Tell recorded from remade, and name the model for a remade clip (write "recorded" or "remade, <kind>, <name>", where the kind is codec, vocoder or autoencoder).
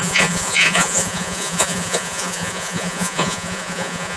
remade, vocoder, Vocos